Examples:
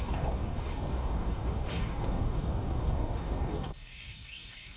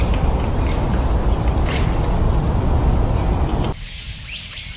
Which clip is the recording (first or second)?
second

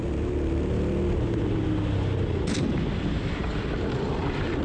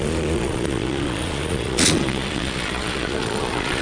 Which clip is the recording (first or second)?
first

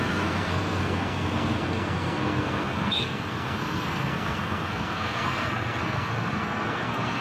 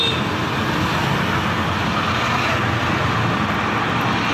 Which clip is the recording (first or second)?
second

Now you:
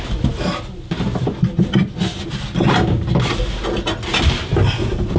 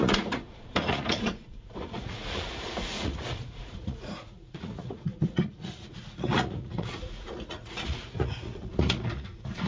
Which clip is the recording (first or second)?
first